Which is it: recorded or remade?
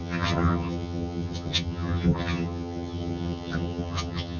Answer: remade